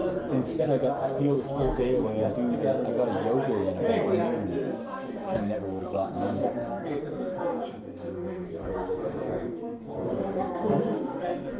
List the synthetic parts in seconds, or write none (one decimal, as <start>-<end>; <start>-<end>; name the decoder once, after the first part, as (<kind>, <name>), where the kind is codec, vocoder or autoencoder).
0.6-2.3 (codec, SNAC); 4.7-11.6